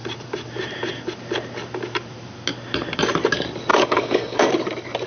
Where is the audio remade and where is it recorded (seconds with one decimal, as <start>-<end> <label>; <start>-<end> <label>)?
0.0-3.7 recorded; 3.7-4.5 remade; 4.5-5.1 recorded